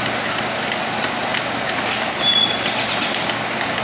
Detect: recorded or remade recorded